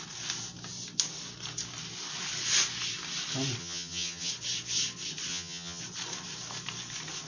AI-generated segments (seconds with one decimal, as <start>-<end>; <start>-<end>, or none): 3.6-4.3; 5.3-5.8